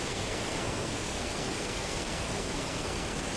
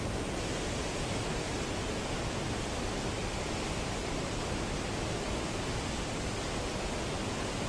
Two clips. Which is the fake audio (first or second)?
first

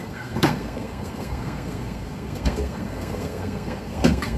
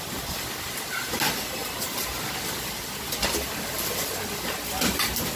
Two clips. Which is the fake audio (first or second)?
first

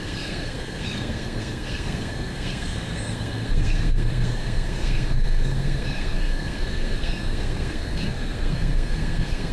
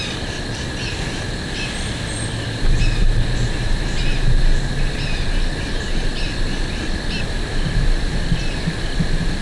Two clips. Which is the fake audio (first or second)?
first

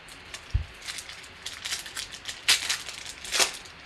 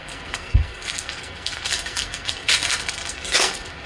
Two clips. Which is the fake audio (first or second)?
second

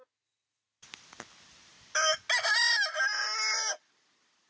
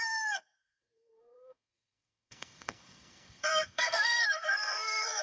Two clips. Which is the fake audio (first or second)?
second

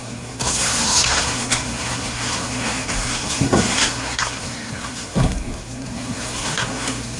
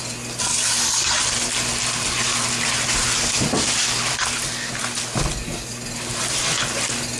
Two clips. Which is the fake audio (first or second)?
first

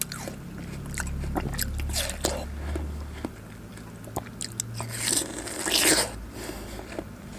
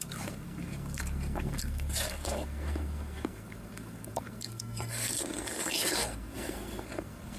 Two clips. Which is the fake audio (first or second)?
second